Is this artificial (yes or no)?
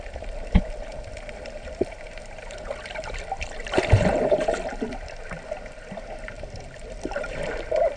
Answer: yes